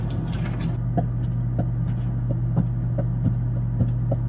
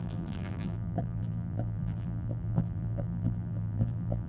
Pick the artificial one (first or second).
second